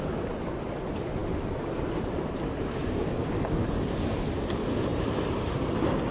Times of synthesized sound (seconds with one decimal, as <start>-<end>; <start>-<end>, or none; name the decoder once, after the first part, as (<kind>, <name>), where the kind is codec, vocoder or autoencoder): 3.2-4.1 (vocoder, BigVGAN v2); 4.9-5.6